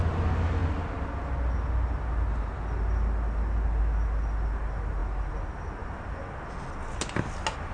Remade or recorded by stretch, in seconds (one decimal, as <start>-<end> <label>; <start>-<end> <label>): 0.0-7.7 recorded

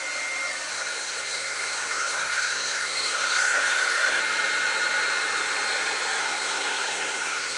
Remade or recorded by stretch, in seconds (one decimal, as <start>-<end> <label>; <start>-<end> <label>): 0.0-0.7 recorded; 0.7-4.2 remade; 4.2-6.2 recorded; 6.2-7.6 remade

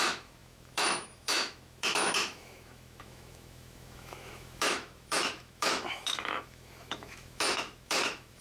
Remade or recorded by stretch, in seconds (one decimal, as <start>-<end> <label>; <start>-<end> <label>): 0.0-8.4 remade

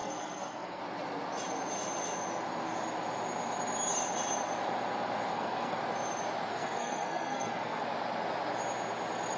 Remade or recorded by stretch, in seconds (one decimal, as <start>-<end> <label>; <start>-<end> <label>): 0.0-0.8 remade; 0.8-5.3 recorded; 5.3-5.8 remade; 5.8-6.5 recorded; 6.5-7.8 remade; 7.8-9.4 recorded

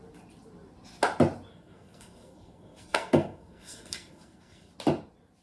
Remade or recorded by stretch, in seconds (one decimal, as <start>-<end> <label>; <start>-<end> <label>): 0.0-1.5 recorded; 1.5-4.7 remade; 4.7-5.4 recorded